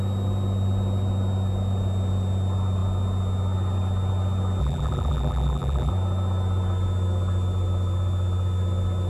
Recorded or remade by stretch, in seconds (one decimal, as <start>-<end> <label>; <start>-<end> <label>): 0.0-4.6 recorded; 4.6-5.9 remade; 5.9-9.1 recorded